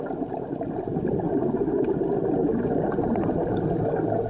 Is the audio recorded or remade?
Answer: recorded